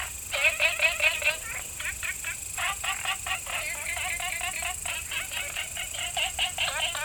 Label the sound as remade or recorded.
recorded